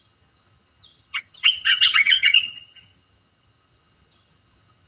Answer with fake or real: fake